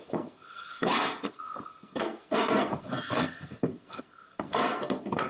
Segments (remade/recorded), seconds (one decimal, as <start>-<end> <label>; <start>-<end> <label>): 0.0-5.3 remade

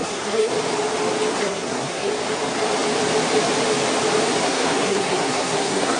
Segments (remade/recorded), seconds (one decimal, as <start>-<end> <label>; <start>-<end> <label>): 0.0-0.5 remade; 0.5-1.3 recorded; 1.3-2.1 remade; 2.1-4.4 recorded; 4.4-6.0 remade

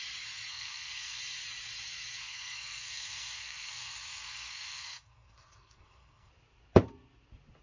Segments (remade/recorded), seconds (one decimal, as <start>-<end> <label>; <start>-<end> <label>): 0.0-0.5 recorded; 0.5-1.2 remade; 1.2-2.2 recorded; 2.2-6.3 remade; 6.3-7.6 recorded

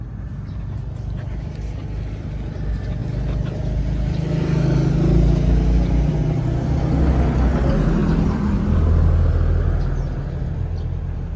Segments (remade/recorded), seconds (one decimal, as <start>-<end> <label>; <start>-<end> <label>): 0.0-11.4 recorded

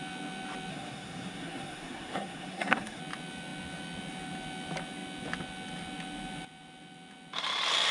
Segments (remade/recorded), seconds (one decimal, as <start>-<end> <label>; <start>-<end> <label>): 0.0-0.7 recorded; 0.7-3.0 remade; 3.0-7.9 recorded

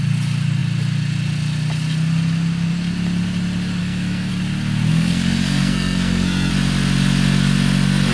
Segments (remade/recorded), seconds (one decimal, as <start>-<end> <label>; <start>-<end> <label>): 0.0-3.8 recorded; 3.8-4.3 remade; 4.3-4.9 recorded; 4.9-6.5 remade; 6.5-8.1 recorded

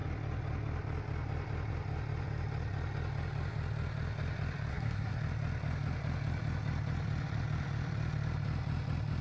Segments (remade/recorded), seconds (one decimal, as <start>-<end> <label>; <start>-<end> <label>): 0.0-4.7 recorded; 4.7-5.2 remade; 5.2-9.2 recorded

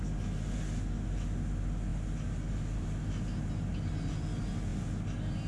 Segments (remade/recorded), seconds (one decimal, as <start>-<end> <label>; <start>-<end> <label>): 0.0-5.5 recorded